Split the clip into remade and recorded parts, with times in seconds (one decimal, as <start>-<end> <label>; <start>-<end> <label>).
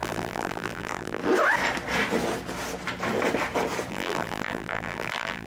0.0-1.2 remade; 1.2-3.9 recorded; 3.9-5.5 remade